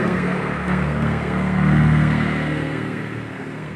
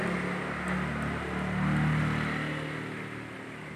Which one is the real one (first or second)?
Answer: second